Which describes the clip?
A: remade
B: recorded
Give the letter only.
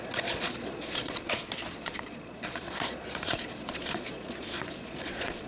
A